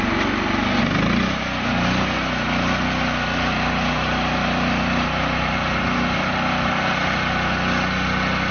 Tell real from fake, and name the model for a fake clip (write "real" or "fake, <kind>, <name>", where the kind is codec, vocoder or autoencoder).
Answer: real